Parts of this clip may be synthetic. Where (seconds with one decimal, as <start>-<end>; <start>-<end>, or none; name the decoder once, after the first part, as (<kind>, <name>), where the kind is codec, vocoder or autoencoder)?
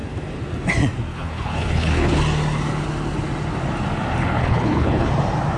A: 1.1-2.2 (codec, HILCodec); 4.2-5.1